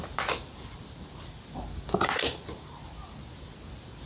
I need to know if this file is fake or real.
real